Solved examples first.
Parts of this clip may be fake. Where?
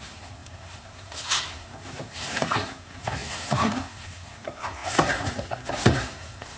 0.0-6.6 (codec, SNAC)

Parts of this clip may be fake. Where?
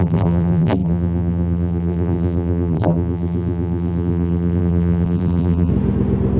0.0-5.7 (vocoder, BigVGAN v2)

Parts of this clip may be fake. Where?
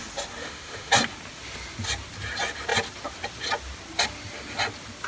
0.4-0.9 (autoencoder, DAC-VAE)